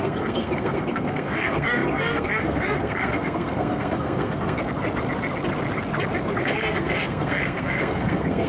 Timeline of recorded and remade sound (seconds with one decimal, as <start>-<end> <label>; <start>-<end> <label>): 0.0-4.6 remade; 4.6-6.4 recorded; 6.4-8.5 remade